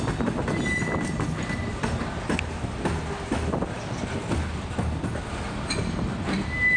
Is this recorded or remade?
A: recorded